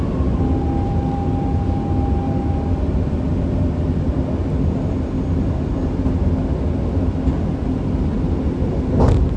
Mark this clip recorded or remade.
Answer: recorded